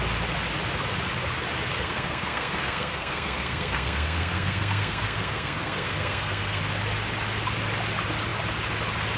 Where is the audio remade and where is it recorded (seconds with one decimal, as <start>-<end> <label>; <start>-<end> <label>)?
0.0-1.7 recorded; 1.7-6.6 remade; 6.6-9.2 recorded